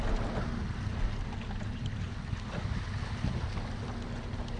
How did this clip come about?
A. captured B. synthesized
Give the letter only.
A